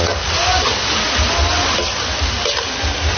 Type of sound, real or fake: real